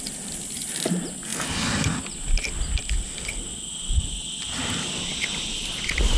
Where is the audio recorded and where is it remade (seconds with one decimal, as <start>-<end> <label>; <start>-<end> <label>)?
0.0-6.2 recorded